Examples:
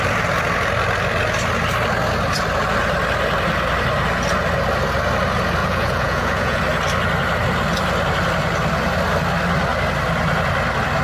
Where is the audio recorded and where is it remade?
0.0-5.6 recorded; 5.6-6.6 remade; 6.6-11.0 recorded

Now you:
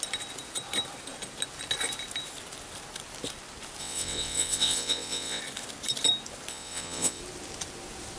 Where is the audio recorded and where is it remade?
0.0-3.8 recorded; 3.8-5.4 remade; 5.4-6.5 recorded; 6.5-7.2 remade; 7.2-8.2 recorded

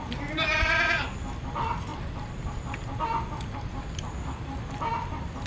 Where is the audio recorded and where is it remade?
0.0-5.5 recorded

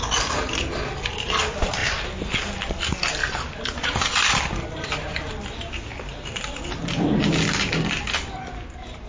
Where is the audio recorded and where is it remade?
0.0-3.2 recorded; 3.2-5.3 remade; 5.3-5.9 recorded; 5.9-7.2 remade; 7.2-9.1 recorded

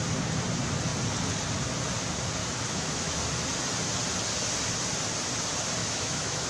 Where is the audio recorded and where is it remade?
0.0-2.4 recorded; 2.4-3.2 remade; 3.2-5.8 recorded; 5.8-6.5 remade

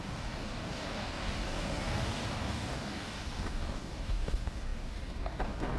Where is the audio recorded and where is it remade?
0.0-5.8 remade

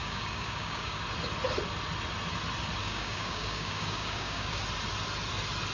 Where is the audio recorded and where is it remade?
0.0-1.0 remade; 1.0-2.8 recorded; 2.8-4.6 remade; 4.6-5.7 recorded